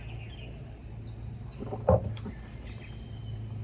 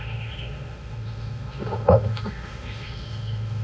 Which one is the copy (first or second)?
second